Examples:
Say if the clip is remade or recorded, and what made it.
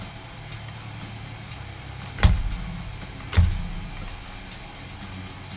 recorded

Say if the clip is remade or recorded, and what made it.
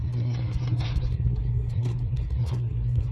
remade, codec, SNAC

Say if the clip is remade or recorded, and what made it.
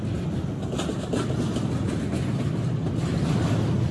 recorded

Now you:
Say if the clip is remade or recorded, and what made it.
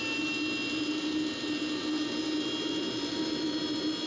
recorded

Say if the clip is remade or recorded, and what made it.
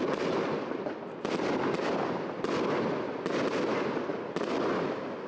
recorded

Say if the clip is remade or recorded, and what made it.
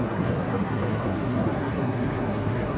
remade, codec, SNAC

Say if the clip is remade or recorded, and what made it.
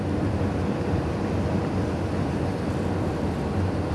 recorded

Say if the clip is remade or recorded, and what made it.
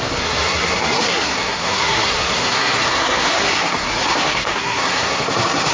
remade, codec, SNAC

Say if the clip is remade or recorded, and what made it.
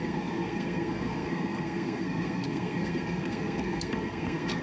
remade, codec, SNAC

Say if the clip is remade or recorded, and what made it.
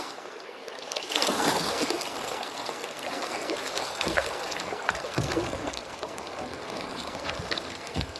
remade, codec, SNAC